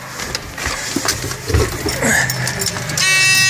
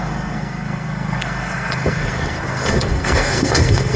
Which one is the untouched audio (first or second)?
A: first